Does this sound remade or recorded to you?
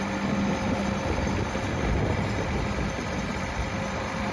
recorded